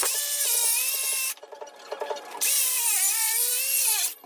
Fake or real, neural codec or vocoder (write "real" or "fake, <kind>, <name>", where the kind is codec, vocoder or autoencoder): real